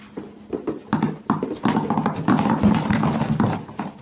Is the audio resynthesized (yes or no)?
no